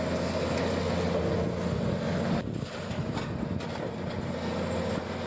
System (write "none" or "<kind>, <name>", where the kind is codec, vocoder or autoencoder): none